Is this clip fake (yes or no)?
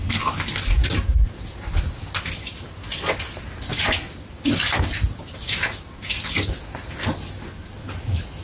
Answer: no